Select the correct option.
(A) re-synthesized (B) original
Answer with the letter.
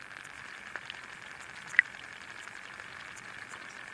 B